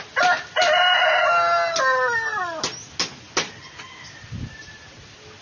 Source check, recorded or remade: recorded